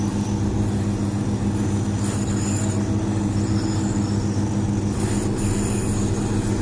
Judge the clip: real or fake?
real